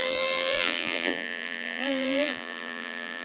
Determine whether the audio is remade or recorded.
remade